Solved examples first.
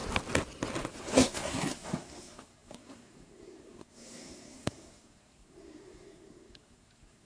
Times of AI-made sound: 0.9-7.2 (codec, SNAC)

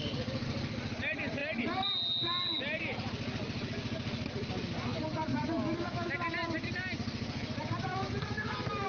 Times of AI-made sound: 5.3-6.1 (autoencoder, DAC-VAE); 7.9-8.9

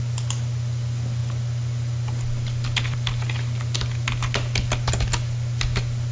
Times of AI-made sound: none

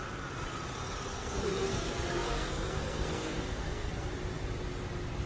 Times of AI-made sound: 1.1-4.1 (codec, SNAC)

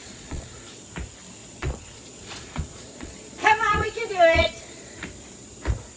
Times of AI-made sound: 0.0-0.8 (vocoder, Vocos); 1.4-5.0

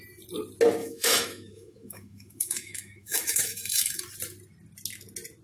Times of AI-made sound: 0.8-4.0 (autoencoder, DAC-VAE)

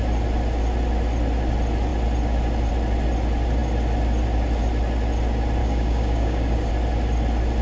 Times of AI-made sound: 5.6-6.7 (codec, DAC)